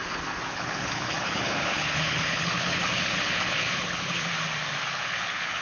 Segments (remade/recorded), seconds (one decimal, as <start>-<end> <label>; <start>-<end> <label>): 0.0-4.3 remade; 4.3-4.8 recorded; 4.8-5.6 remade